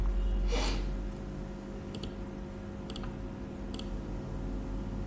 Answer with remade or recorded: recorded